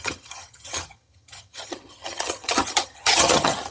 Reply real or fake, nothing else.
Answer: fake